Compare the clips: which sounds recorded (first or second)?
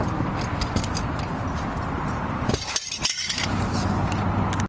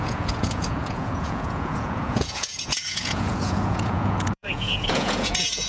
first